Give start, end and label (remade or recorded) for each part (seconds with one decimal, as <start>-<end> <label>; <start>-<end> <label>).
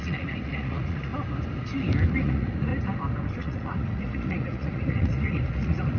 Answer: 0.0-1.1 remade; 1.1-2.1 recorded; 2.1-2.7 remade; 2.7-3.4 recorded; 3.4-6.0 remade